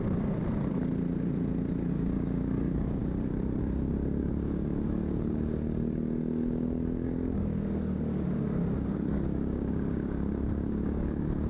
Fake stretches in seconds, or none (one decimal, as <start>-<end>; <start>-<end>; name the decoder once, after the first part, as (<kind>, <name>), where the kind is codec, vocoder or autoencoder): 0.0-0.4 (codec, DAC); 1.9-3.0; 3.6-11.5